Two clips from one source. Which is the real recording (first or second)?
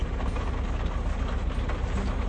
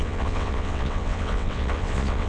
first